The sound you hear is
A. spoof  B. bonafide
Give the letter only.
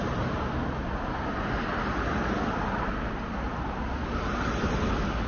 B